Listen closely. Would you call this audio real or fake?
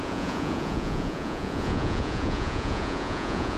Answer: fake